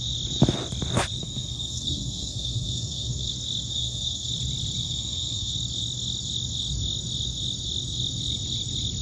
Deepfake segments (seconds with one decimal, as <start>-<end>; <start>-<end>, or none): 1.2-3.3; 3.7-4.3; 4.8-5.5